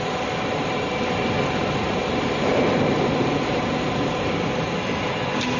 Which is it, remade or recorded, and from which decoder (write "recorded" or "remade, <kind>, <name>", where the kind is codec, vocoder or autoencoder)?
recorded